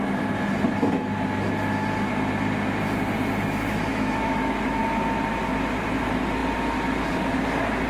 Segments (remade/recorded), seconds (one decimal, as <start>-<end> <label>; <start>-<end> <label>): 0.0-3.9 recorded; 3.9-4.8 remade; 4.8-7.9 recorded